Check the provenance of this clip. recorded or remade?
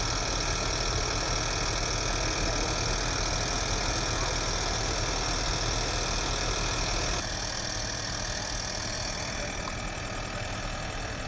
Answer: recorded